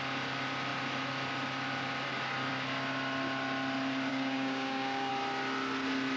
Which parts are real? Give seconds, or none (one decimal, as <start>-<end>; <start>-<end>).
0.0-4.1; 5.1-6.2